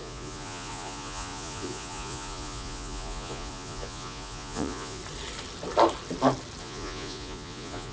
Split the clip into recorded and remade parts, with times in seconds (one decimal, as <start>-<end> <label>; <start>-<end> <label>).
0.0-5.0 remade; 5.0-6.6 recorded; 6.6-7.9 remade